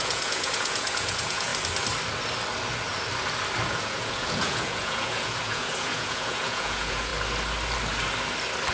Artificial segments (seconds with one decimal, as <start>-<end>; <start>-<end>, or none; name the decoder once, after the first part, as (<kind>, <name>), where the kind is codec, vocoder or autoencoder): 0.0-1.5 (vocoder, Vocos); 3.7-7.1